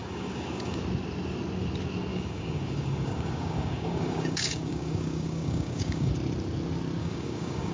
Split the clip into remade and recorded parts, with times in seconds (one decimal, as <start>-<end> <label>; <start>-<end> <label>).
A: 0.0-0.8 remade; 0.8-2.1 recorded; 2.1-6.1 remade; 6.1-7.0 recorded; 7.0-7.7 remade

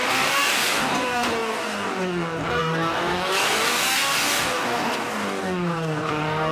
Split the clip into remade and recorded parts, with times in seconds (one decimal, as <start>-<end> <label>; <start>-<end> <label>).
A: 0.0-6.5 remade

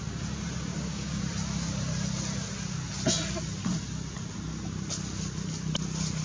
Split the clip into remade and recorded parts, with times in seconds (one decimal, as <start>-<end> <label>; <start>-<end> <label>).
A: 0.0-0.7 recorded; 0.7-1.2 remade; 1.2-6.2 recorded